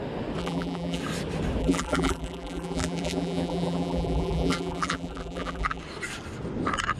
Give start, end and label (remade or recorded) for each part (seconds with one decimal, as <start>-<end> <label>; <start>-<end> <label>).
0.0-0.4 recorded; 0.4-1.0 remade; 1.0-1.6 recorded; 1.6-5.8 remade; 5.8-7.0 recorded

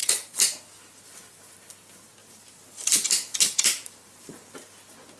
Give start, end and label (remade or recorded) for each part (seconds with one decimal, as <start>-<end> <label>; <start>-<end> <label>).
0.0-0.6 remade; 0.6-2.2 recorded; 2.2-4.4 remade; 4.4-5.2 recorded

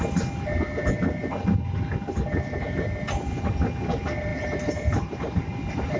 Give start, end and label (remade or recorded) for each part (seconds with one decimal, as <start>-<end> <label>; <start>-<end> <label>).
0.0-4.3 recorded; 4.3-6.0 remade

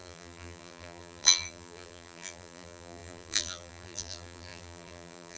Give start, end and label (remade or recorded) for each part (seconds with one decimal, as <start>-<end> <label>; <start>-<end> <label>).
0.0-5.4 remade

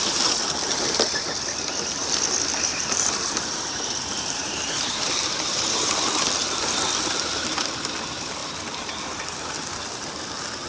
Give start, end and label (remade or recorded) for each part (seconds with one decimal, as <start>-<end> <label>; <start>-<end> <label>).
0.0-2.7 recorded; 2.7-5.9 remade; 5.9-10.7 recorded

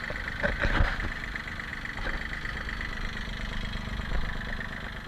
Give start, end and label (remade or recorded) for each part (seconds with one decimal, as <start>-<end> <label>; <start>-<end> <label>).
0.0-1.7 remade; 1.7-5.1 recorded

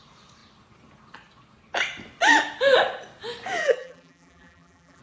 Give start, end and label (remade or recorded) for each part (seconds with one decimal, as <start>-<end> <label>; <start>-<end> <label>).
0.0-3.6 recorded; 3.6-5.0 remade